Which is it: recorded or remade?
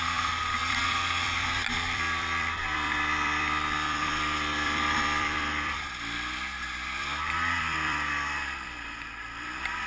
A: remade